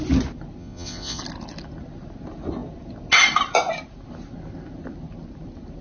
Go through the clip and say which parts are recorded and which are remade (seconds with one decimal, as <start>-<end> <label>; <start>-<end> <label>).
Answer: 0.0-0.6 recorded; 0.6-1.2 remade; 1.2-5.8 recorded